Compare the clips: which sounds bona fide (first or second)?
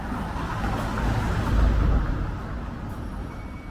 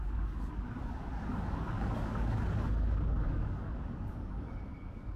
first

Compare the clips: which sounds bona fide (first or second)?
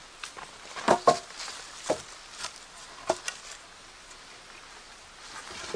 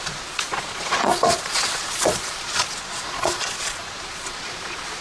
first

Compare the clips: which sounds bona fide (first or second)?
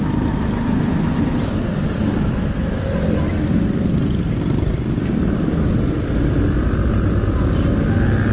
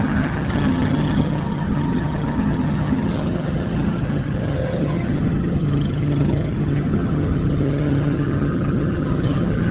first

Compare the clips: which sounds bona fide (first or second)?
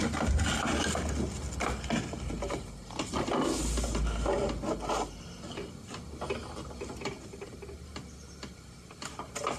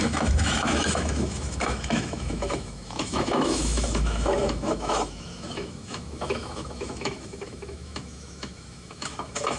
first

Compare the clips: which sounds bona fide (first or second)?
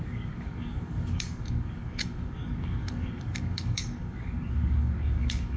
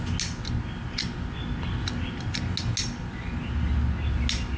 second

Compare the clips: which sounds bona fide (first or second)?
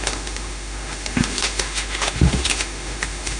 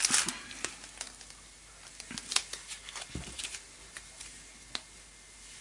second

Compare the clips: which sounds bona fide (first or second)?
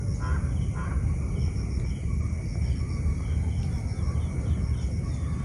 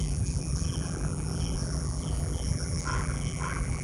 first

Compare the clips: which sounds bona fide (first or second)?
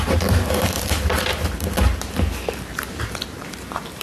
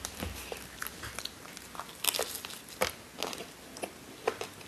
second